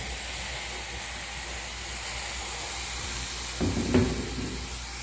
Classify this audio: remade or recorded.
recorded